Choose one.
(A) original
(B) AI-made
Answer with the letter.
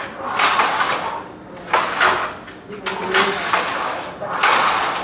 A